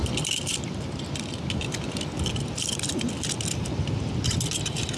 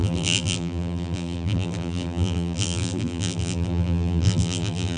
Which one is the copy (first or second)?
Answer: second